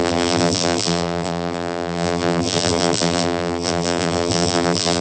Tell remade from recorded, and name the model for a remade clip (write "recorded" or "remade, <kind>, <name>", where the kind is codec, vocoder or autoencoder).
remade, vocoder, BigVGAN v2